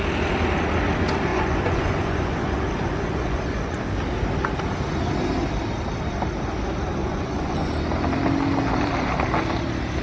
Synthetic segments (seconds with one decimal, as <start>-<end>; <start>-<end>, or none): 1.3-3.8; 7.0-7.7